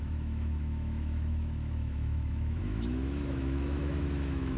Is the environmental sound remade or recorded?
remade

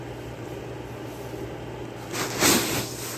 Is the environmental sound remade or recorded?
recorded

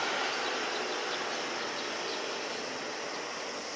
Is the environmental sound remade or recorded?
recorded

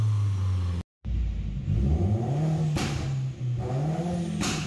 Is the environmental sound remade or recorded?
recorded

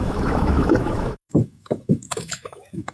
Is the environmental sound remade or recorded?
remade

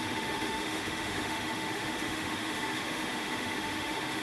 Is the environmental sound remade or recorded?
remade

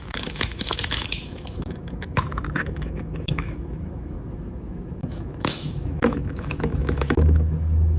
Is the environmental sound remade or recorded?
remade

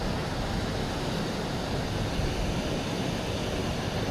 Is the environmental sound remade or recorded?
recorded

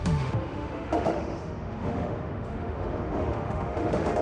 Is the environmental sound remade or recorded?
remade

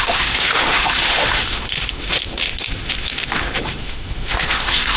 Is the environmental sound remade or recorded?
remade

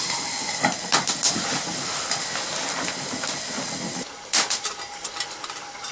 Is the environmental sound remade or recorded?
recorded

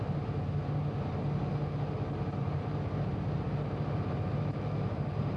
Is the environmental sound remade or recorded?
recorded